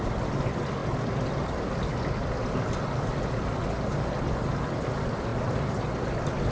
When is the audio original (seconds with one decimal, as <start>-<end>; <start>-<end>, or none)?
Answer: 0.0-6.5